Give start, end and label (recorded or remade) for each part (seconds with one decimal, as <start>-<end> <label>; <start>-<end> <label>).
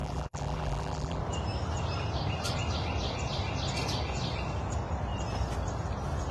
0.0-1.2 remade; 1.2-6.3 recorded